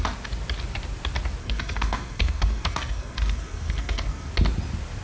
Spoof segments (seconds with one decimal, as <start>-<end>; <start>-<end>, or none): 1.4-4.3